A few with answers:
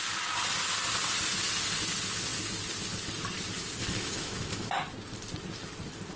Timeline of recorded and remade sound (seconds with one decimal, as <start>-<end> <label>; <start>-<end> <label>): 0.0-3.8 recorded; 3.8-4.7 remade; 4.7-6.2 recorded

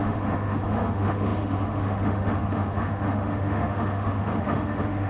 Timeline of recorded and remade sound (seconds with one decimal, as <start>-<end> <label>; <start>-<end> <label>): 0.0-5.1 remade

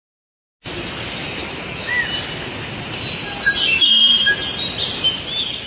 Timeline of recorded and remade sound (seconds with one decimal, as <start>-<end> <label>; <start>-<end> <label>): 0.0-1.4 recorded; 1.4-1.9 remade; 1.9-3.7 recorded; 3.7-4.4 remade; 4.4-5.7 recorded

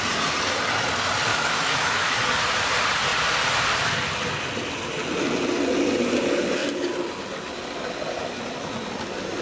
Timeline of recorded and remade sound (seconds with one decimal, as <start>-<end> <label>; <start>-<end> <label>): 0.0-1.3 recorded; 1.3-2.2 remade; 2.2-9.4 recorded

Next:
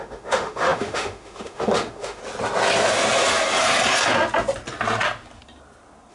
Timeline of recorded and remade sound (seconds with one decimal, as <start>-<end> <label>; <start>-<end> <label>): 0.0-2.2 remade; 2.2-6.1 recorded

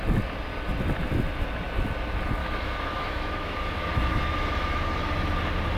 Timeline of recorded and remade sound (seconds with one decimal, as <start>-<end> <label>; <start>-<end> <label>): 0.0-2.4 recorded; 2.4-4.8 remade; 4.8-5.8 recorded

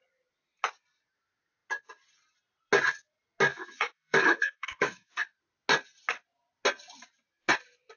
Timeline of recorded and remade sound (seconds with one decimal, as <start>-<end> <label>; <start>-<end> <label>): 0.0-3.5 recorded; 3.5-5.1 remade; 5.1-8.0 recorded

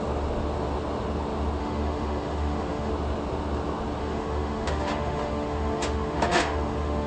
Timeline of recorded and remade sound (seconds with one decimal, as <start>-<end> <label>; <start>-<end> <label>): 0.0-1.6 recorded; 1.6-2.9 remade; 2.9-4.0 recorded; 4.0-7.1 remade